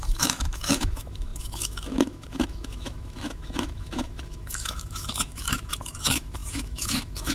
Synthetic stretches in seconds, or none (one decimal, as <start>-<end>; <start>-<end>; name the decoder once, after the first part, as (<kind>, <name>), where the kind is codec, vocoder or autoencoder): 0.0-7.3 (autoencoder, DAC-VAE)

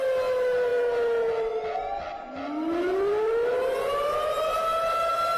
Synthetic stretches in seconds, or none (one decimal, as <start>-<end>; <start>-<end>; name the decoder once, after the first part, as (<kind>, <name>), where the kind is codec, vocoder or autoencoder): none